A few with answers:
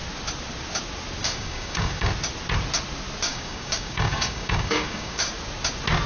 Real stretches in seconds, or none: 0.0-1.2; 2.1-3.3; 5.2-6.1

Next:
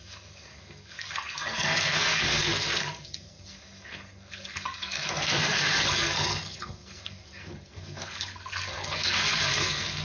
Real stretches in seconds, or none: none

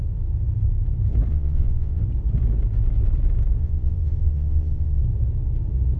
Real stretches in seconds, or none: 0.0-1.3; 2.0-3.6; 5.0-6.0

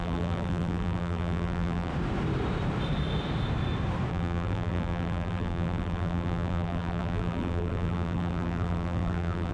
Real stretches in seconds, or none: 1.9-4.1

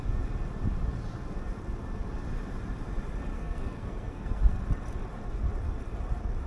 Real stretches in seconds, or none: 0.0-3.3; 4.6-6.5

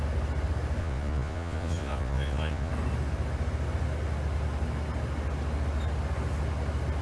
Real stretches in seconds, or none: 0.0-0.8; 2.7-7.0

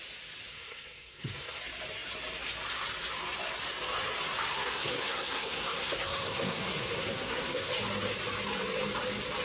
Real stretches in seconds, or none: 0.0-0.5; 1.6-4.5; 7.7-9.4

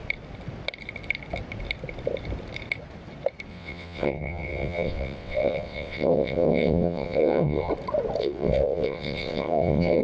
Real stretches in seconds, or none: 0.0-3.5; 7.7-8.2